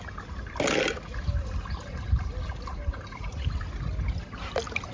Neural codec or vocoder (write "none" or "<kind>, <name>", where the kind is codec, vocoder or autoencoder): none